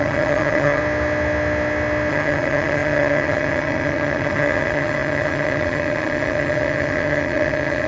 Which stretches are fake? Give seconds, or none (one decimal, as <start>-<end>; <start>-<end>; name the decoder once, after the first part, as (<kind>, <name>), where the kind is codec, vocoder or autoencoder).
0.0-0.8 (vocoder, HiFi-GAN); 2.1-7.9